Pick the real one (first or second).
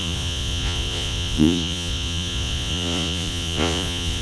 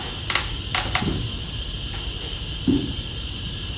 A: second